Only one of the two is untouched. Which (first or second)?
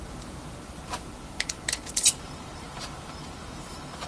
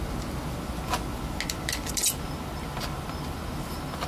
second